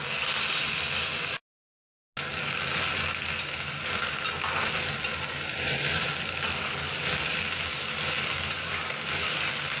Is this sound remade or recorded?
recorded